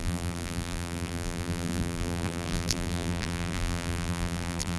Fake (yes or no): yes